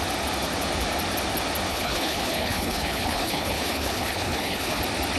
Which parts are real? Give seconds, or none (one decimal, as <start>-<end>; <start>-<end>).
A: 0.0-1.7; 4.8-5.2